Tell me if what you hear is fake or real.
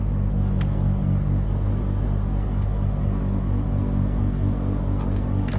fake